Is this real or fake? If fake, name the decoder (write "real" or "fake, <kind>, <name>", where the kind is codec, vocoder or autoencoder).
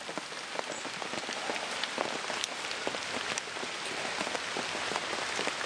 real